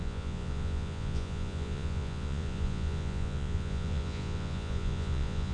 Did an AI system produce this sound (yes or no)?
yes